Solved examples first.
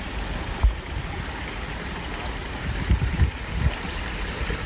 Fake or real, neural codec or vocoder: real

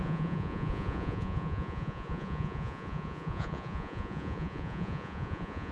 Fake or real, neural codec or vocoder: fake, vocoder, Vocos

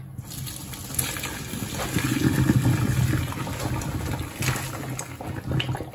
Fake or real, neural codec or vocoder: real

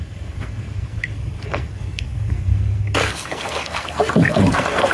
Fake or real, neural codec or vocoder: fake, codec, SNAC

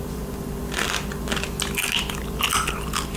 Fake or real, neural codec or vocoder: real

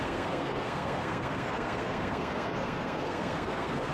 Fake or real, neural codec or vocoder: fake, codec, SNAC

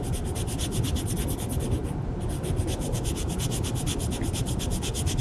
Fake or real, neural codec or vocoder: real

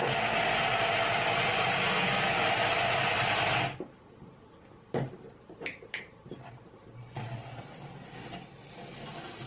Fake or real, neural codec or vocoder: real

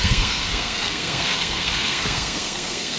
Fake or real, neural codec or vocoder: fake, codec, SNAC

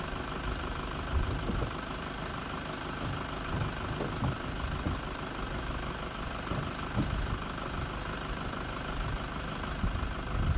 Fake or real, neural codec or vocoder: real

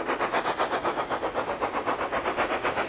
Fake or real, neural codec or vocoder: real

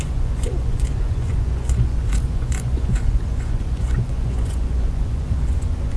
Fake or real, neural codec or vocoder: fake, vocoder, Vocos